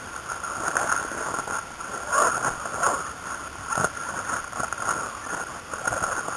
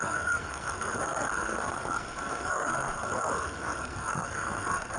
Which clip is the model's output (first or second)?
second